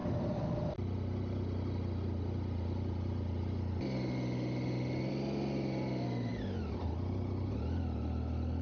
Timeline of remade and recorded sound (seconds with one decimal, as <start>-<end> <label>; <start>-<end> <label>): 0.0-8.6 recorded